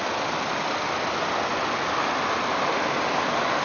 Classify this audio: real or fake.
real